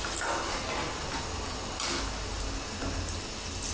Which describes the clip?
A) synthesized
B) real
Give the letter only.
B